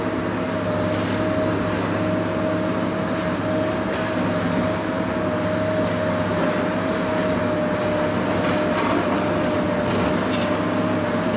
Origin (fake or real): real